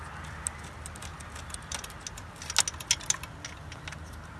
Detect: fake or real real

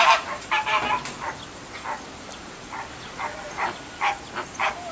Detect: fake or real real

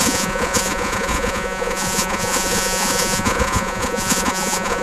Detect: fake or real fake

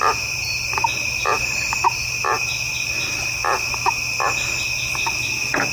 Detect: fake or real real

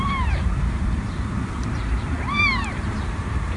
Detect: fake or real fake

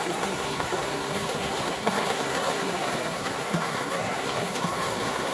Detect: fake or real fake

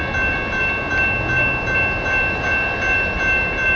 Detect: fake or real real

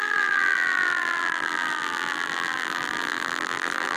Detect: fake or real fake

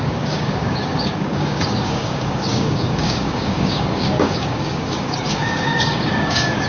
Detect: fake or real fake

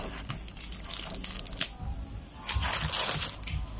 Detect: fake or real real